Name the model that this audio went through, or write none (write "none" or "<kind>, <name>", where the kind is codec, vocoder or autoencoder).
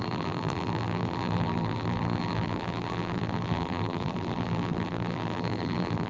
vocoder, BigVGAN v2